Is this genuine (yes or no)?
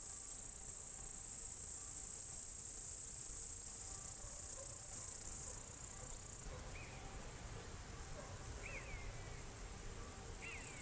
yes